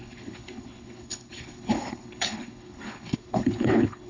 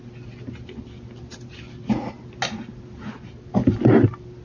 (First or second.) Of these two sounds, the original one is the second